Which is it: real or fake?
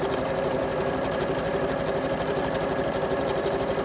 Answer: fake